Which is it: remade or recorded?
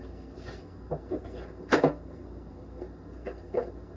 remade